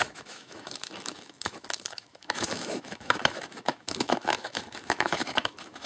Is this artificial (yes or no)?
yes